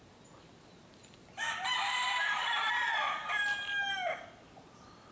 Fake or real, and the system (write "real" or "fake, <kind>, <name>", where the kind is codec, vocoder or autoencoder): real